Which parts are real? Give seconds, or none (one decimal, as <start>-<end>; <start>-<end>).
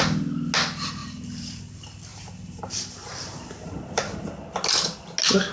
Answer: 0.0-1.0; 1.6-2.1; 2.7-5.5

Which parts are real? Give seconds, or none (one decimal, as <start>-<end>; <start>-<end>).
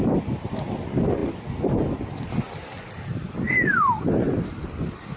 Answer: 0.0-5.2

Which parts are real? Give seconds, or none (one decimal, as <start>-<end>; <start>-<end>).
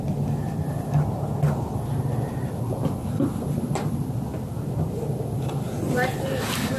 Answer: 0.0-4.3; 5.7-6.8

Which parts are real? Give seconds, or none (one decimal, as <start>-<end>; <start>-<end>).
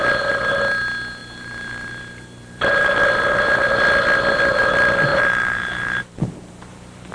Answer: 0.0-1.2; 3.0-5.1